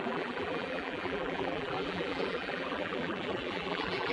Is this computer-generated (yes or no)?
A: yes